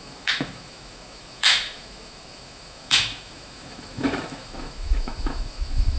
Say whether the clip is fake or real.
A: fake